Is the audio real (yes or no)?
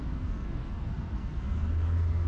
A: no